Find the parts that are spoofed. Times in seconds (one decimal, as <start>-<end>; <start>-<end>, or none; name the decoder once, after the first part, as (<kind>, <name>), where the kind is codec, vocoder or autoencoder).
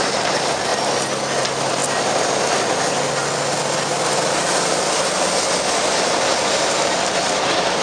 0.0-0.7 (vocoder, BigVGAN v2); 1.4-1.8; 6.5-7.8